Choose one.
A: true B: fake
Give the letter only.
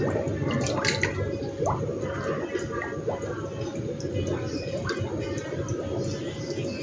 A